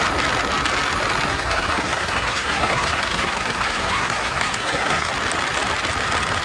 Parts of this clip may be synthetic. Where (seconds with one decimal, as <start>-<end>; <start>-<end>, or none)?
1.3-5.1